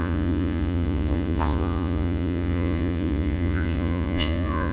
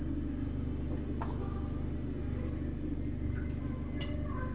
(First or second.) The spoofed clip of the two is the first